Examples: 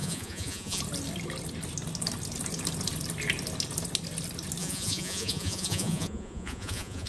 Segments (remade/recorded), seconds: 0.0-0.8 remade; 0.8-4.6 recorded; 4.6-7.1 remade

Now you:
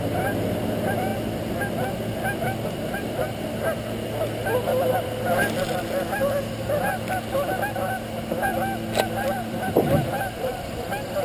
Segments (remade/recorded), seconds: 0.0-1.1 remade; 1.1-2.4 recorded; 2.4-11.2 remade